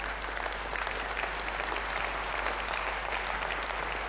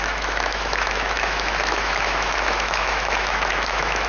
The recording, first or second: first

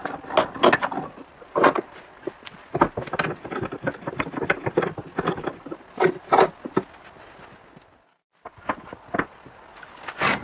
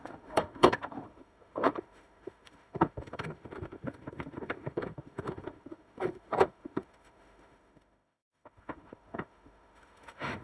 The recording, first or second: first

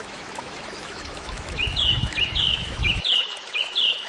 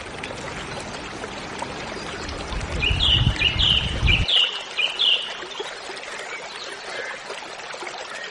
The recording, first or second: second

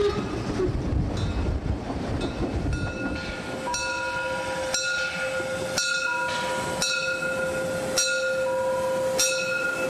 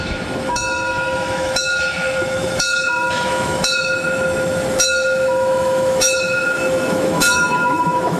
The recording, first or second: first